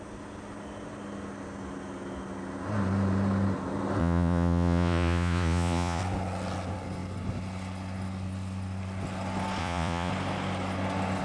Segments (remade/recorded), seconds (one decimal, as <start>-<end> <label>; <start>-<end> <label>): 0.0-4.0 recorded; 4.0-6.0 remade; 6.0-9.6 recorded; 9.6-10.1 remade; 10.1-11.2 recorded